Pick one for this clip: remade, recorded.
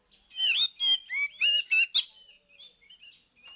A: recorded